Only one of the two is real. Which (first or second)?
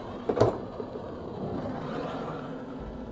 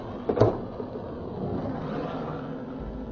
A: second